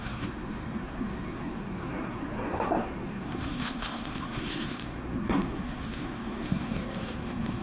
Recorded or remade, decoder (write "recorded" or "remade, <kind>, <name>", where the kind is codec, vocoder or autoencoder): remade, codec, SNAC